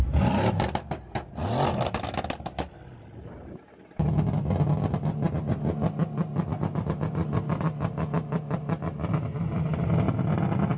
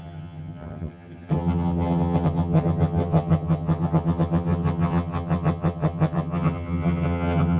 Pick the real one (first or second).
first